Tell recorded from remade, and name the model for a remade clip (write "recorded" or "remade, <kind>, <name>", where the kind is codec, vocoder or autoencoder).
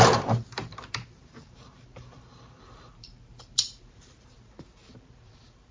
remade, vocoder, BigVGAN v2